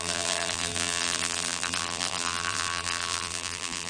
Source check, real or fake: fake